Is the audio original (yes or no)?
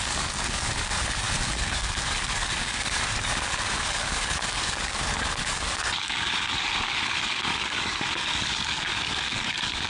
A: no